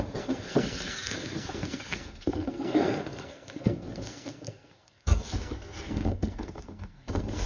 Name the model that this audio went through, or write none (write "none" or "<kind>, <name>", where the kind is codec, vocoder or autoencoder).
codec, SNAC